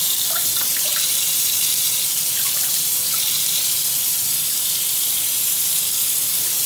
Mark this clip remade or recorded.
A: remade